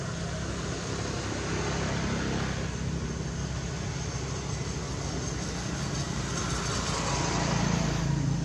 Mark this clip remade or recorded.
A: recorded